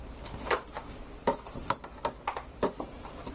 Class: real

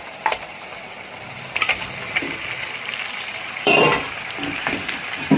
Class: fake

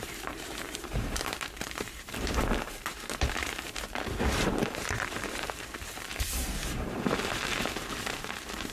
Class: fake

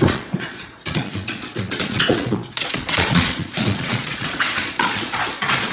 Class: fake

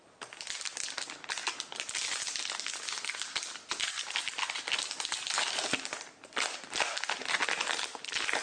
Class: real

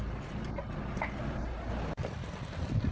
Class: real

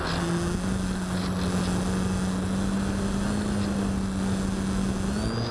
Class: real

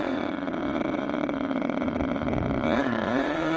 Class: fake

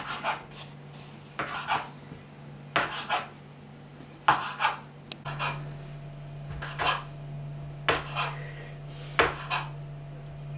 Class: real